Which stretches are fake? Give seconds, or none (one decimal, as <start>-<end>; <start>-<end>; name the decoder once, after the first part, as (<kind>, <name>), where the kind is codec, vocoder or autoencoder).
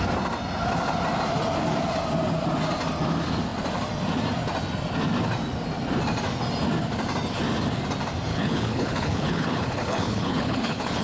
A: 8.3-11.0 (codec, HILCodec)